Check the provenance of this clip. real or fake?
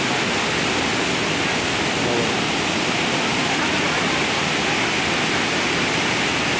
real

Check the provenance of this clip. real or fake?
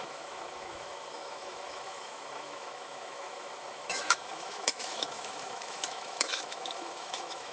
fake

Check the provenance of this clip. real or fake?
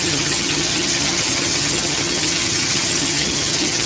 fake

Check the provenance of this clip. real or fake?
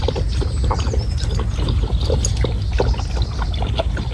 real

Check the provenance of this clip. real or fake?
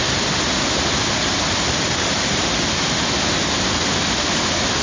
real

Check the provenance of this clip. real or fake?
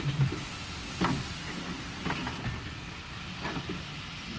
real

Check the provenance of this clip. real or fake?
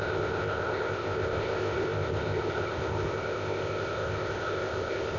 fake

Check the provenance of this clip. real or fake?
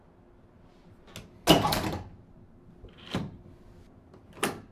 real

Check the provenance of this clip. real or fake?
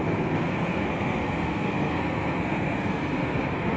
fake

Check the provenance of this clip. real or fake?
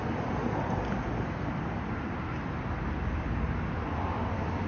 real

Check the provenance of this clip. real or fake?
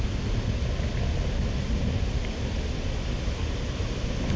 real